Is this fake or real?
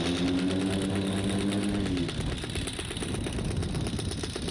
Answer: real